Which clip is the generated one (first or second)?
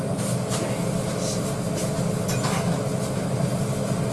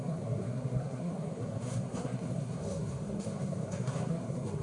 second